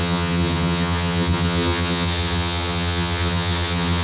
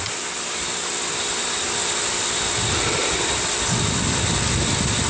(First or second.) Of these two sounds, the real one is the second